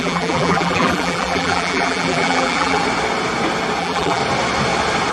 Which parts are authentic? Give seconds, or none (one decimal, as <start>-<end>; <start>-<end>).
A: 2.8-3.8; 4.2-5.1